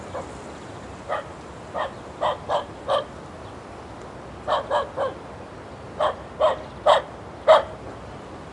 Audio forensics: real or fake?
fake